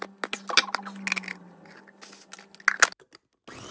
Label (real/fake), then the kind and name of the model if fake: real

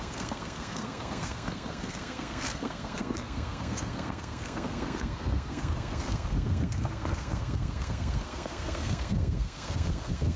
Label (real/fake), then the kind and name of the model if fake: fake, codec, SNAC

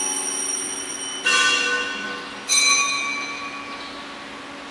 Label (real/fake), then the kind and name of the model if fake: real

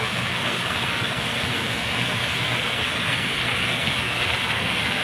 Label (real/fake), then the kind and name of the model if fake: fake, codec, SNAC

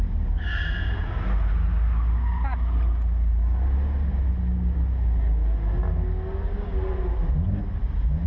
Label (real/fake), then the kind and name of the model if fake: real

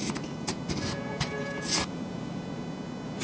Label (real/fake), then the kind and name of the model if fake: real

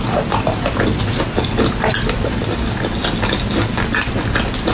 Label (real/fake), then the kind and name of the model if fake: real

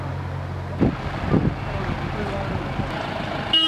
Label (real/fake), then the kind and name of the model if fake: real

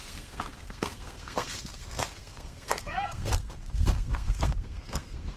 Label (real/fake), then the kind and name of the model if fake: fake, codec, SNAC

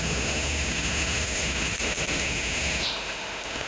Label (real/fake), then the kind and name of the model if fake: fake, autoencoder, DAC-VAE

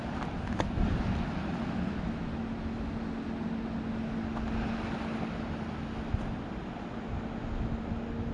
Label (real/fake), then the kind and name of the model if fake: real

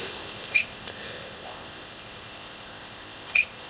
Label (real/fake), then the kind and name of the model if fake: fake, codec, ZipCodec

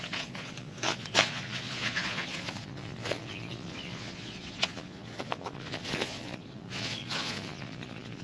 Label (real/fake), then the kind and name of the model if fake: fake, vocoder, Vocos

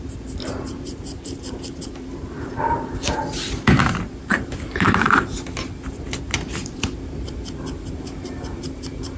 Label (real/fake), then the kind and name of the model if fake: fake, vocoder, BigVGAN v2